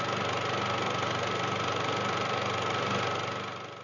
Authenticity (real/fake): real